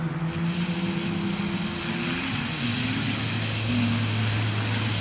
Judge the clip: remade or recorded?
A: recorded